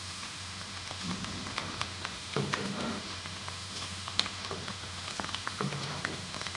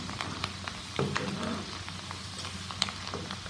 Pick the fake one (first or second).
first